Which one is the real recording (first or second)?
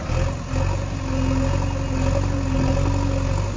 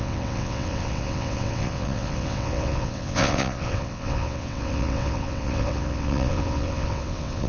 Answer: first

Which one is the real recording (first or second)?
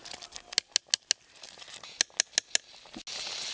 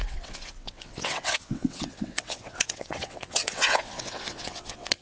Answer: first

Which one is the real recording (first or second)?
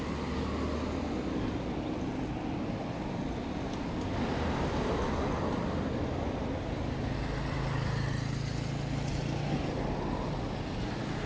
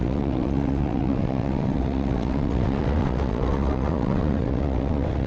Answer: first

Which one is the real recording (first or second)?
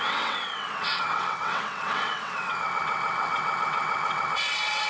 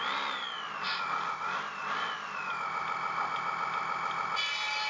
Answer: second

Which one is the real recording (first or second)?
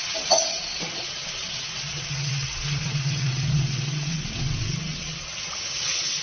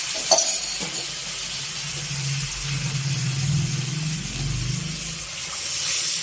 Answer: second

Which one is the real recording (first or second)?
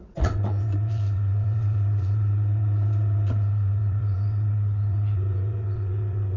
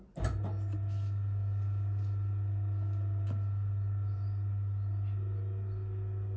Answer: second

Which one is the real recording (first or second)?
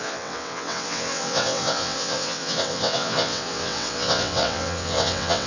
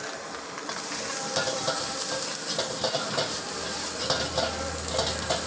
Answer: second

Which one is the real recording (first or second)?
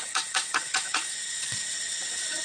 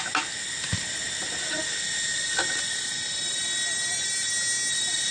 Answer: second